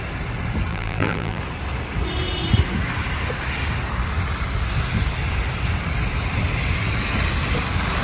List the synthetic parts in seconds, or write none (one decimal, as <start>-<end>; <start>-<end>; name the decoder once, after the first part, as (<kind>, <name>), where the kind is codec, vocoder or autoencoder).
0.7-1.4 (vocoder, BigVGAN v2)